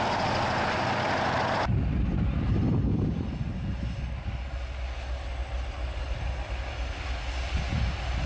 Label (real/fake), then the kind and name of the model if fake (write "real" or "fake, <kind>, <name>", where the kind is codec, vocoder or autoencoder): real